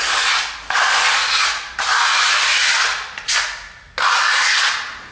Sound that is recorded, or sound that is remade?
recorded